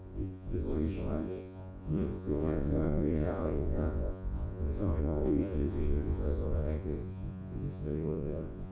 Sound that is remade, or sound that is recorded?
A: remade